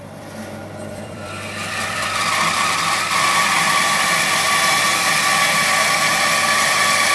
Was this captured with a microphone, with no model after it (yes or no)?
no